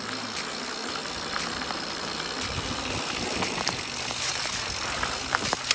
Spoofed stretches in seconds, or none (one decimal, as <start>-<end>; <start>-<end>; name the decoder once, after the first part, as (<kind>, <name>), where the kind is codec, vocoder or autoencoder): 1.0-4.4 (vocoder, BigVGAN v2)